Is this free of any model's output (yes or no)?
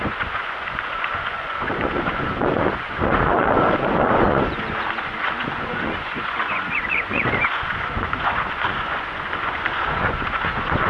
no